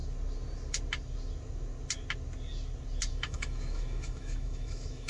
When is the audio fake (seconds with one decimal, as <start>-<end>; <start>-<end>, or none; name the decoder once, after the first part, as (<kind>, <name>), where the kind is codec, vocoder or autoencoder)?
3.1-5.1 (autoencoder, DAC-VAE)